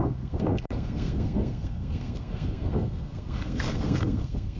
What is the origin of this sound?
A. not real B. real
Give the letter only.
A